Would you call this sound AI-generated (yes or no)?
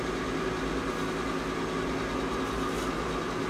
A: no